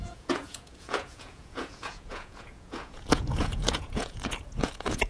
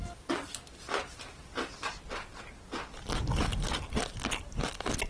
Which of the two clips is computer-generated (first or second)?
first